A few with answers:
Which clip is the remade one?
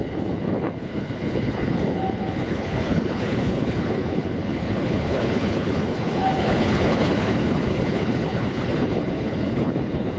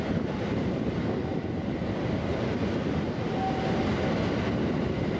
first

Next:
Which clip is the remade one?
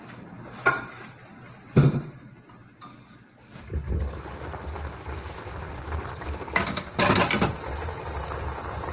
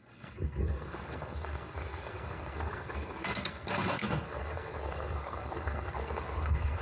second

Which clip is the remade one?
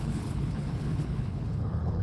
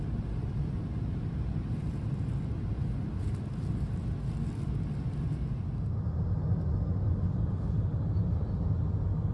first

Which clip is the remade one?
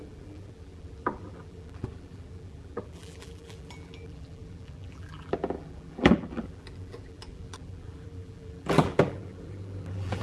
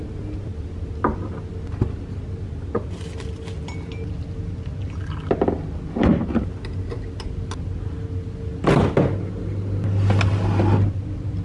first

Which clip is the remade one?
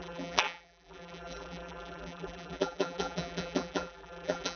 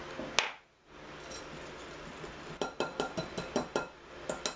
first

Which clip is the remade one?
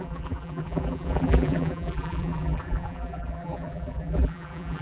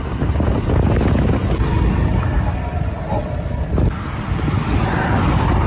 first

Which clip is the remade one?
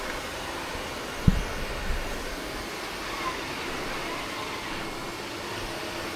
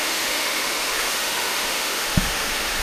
second